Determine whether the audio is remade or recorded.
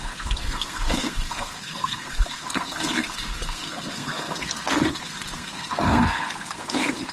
remade